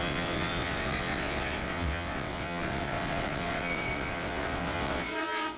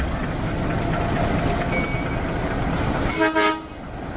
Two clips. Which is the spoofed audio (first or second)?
first